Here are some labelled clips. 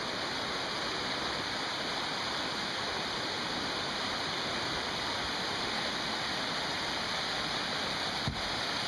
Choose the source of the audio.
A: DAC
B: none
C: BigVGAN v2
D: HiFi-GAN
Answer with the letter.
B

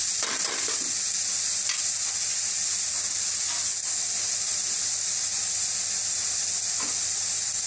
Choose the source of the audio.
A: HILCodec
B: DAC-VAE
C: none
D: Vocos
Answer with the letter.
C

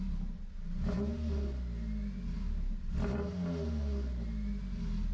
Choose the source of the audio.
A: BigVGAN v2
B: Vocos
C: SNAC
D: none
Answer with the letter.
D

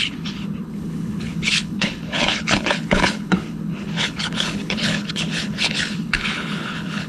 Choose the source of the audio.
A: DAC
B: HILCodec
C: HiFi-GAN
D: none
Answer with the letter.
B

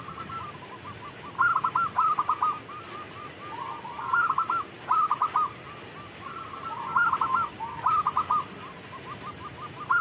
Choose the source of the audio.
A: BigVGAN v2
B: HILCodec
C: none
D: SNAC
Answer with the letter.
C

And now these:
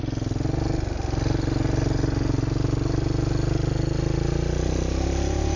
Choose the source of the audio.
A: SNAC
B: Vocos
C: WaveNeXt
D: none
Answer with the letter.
D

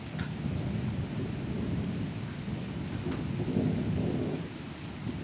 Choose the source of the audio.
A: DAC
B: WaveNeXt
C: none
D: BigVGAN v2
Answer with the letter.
C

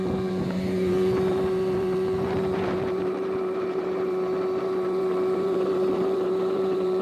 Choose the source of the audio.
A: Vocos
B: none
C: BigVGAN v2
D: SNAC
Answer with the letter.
C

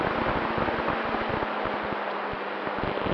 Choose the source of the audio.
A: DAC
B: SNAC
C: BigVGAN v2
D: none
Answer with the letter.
D